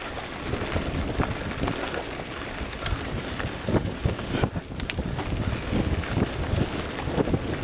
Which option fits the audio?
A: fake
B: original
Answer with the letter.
B